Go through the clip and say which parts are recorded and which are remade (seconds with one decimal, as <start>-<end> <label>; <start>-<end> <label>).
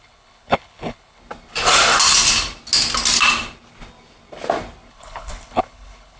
0.0-1.2 remade; 1.2-4.9 recorded; 4.9-6.2 remade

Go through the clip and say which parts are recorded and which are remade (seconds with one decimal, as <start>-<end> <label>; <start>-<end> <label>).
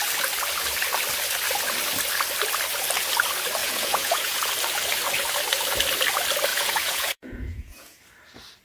0.0-3.6 recorded; 3.6-4.5 remade; 4.5-6.5 recorded; 6.5-8.0 remade; 8.0-8.6 recorded